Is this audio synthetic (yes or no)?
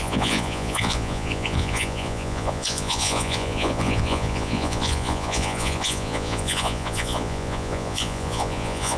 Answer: yes